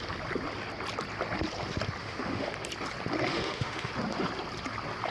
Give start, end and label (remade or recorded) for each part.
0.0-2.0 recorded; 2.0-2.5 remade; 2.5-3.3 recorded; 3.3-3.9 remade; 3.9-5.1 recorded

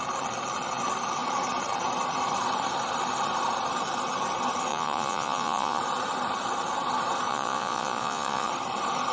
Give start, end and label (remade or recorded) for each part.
0.0-4.7 recorded; 4.7-5.8 remade; 5.8-7.3 recorded; 7.3-8.5 remade; 8.5-9.1 recorded

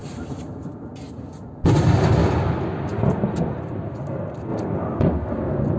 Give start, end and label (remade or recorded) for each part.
0.0-0.5 remade; 0.5-5.8 recorded

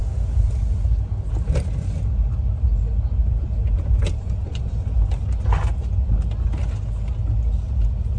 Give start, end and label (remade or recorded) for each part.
0.0-3.6 recorded; 3.6-4.7 remade; 4.7-8.2 recorded

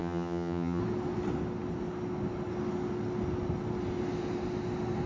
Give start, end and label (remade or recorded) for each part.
0.0-0.8 remade; 0.8-5.1 recorded

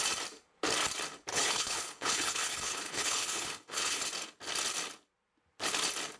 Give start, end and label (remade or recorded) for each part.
0.0-1.3 recorded; 1.3-4.0 remade; 4.0-6.2 recorded